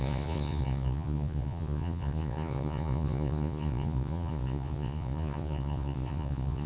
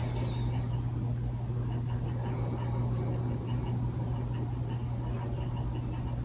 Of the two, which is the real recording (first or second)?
second